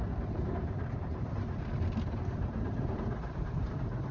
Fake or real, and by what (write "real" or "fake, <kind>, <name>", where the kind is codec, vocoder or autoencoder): fake, vocoder, BigVGAN v2